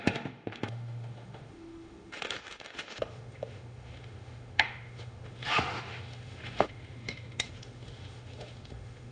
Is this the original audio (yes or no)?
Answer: no